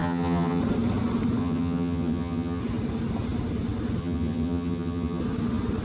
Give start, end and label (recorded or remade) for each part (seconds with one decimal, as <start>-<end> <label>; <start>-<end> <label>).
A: 0.0-0.6 remade; 0.6-1.4 recorded; 1.4-2.6 remade; 2.6-4.0 recorded; 4.0-5.2 remade; 5.2-5.8 recorded